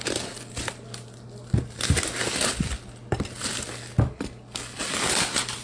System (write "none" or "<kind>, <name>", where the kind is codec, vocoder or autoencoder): none